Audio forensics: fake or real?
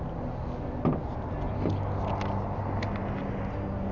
real